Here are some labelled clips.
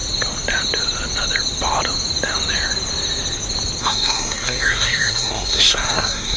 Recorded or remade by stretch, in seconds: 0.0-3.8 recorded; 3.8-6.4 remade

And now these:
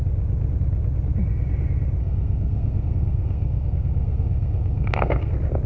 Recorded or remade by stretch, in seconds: 0.0-2.0 recorded; 2.0-5.3 remade; 5.3-5.7 recorded